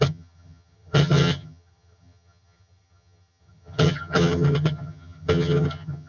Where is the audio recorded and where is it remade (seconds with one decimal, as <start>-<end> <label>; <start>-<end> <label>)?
0.0-6.1 remade